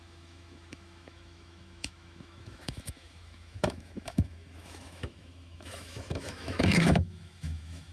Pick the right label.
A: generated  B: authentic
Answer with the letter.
A